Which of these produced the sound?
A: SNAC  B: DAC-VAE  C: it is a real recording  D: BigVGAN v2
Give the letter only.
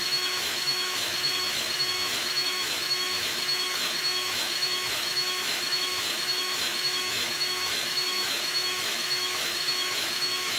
B